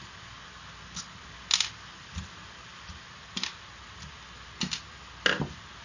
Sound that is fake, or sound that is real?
real